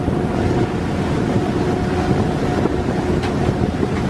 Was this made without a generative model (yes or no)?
yes